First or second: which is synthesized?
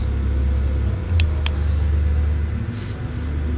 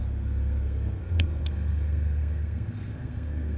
second